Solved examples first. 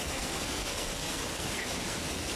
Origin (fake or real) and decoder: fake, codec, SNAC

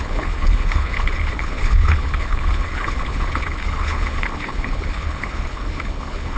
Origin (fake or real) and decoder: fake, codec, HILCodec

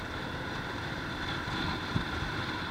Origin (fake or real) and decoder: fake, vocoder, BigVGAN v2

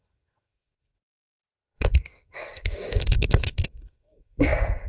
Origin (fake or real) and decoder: fake, codec, SNAC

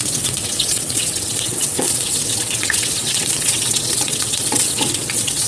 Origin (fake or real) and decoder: fake, vocoder, WaveNeXt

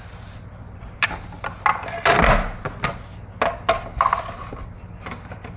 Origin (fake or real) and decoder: real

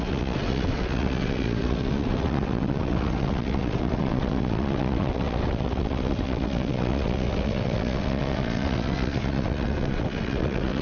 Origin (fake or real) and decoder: fake, vocoder, WaveNeXt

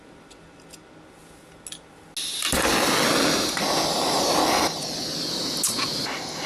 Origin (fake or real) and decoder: real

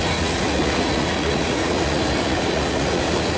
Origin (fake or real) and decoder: fake, vocoder, Vocos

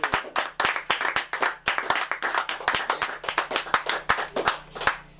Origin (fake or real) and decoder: real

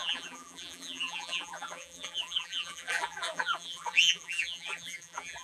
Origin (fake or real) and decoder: fake, vocoder, BigVGAN v2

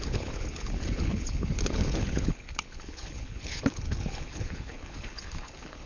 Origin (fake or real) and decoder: fake, codec, HILCodec